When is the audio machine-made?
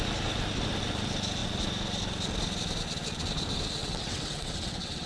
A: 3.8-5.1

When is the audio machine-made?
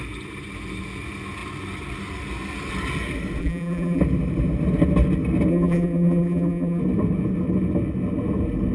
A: 3.4-4.0; 5.5-6.8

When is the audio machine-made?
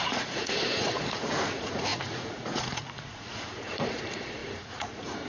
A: 0.0-5.3